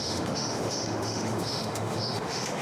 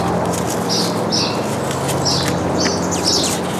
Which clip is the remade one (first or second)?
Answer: first